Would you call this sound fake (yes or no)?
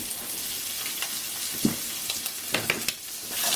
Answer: no